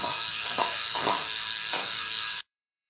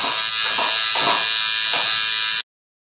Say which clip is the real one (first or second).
second